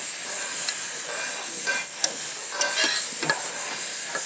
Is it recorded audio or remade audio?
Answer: recorded